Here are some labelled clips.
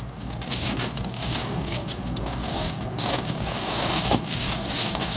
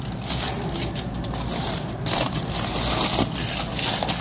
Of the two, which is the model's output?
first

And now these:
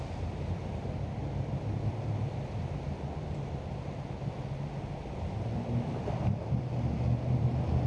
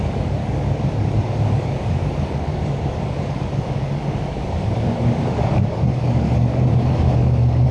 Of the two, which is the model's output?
second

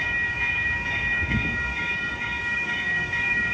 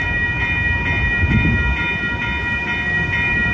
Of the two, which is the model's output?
first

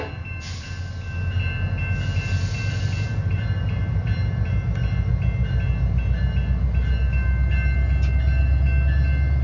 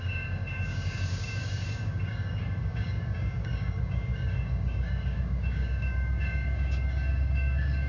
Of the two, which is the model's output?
second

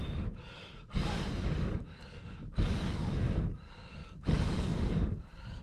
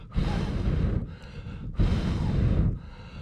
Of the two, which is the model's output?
first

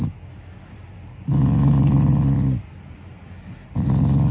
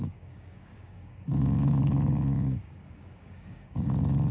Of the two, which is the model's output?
second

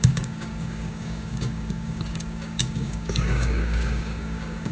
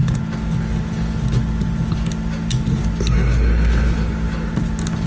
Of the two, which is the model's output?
first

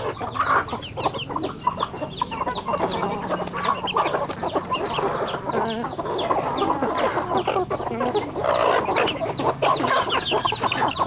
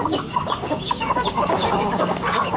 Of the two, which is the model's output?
second